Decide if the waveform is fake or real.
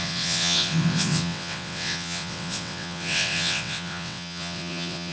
fake